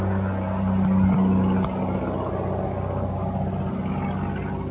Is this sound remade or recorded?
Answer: recorded